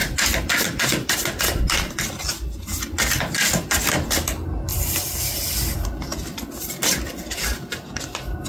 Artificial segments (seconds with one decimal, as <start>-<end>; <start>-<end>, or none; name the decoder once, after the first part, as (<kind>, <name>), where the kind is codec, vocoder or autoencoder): 4.7-8.0 (vocoder, BigVGAN v2)